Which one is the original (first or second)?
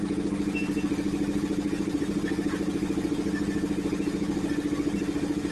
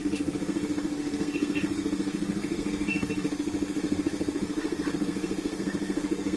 first